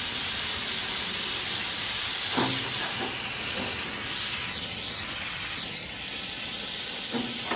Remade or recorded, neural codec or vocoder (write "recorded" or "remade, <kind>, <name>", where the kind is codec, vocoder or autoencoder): recorded